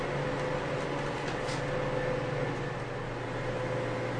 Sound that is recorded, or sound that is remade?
recorded